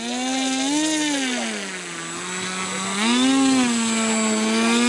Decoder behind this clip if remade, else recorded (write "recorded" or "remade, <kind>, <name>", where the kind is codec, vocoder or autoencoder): recorded